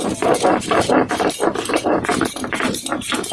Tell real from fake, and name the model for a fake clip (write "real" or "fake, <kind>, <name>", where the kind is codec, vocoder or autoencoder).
fake, vocoder, BigVGAN v2